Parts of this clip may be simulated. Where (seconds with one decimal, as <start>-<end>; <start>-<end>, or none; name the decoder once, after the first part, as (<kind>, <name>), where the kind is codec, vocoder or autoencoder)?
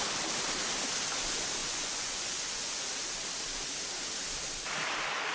1.6-2.9 (vocoder, Vocos)